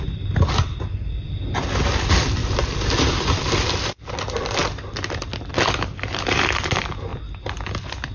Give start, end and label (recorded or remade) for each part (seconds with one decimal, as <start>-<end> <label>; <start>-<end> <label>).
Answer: 0.0-2.4 recorded; 2.4-4.1 remade; 4.1-4.6 recorded; 4.6-5.5 remade; 5.5-8.1 recorded